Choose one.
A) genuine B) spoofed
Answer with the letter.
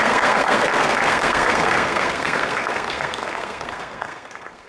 B